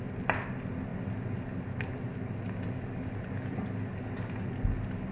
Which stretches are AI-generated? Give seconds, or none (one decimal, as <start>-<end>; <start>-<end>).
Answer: none